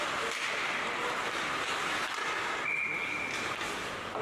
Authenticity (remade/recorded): recorded